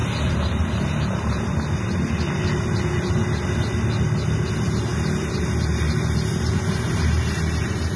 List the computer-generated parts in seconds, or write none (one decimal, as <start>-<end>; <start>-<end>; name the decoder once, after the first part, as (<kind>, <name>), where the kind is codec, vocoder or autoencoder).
none